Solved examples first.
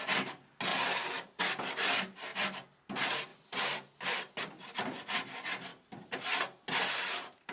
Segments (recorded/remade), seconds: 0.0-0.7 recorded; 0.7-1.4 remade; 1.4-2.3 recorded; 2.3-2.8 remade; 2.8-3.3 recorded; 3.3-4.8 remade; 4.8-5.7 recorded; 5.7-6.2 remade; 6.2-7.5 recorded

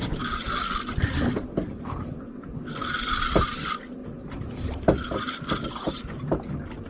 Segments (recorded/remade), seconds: 0.0-6.9 recorded

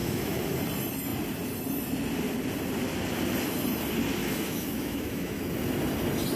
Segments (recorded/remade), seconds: 0.0-0.6 remade; 0.6-4.2 recorded; 4.2-5.4 remade; 5.4-6.4 recorded

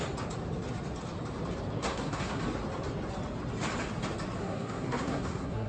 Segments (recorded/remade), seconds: 0.0-1.8 recorded; 1.8-2.4 remade; 2.4-4.4 recorded; 4.4-5.7 remade

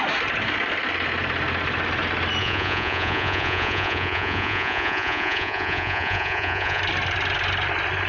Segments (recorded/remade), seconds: 0.0-2.4 recorded; 2.4-6.8 remade; 6.8-8.1 recorded

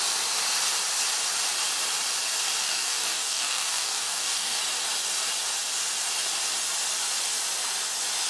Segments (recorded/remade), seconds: 0.0-2.6 recorded; 2.6-4.6 remade; 4.6-8.3 recorded